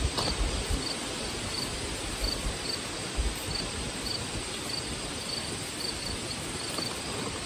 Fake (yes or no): no